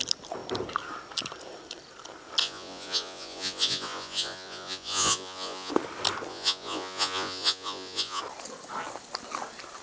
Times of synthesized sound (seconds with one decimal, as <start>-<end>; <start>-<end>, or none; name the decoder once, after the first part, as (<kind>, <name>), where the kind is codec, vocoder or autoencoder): 2.4-5.7 (vocoder, Vocos); 6.3-8.2